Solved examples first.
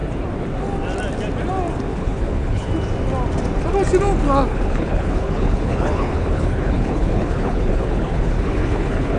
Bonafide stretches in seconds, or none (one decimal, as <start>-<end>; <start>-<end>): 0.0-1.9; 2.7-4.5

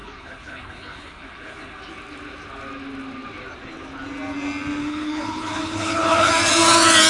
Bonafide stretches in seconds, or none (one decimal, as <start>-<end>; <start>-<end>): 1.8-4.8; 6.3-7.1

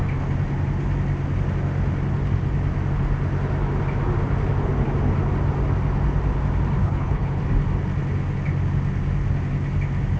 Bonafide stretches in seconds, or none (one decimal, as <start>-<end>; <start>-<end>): 0.0-6.8; 7.4-10.2

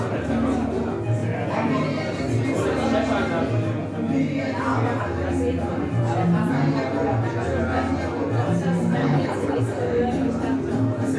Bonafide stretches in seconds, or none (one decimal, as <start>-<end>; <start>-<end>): 0.0-9.0; 9.6-11.2